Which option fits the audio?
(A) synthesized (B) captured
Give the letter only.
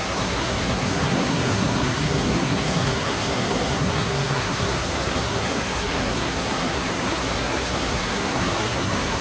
A